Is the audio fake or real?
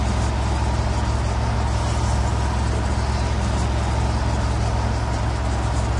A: real